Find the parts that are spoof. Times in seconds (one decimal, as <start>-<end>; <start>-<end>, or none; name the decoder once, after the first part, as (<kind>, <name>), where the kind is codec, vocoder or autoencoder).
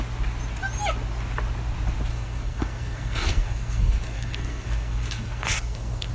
2.1-6.1 (codec, SNAC)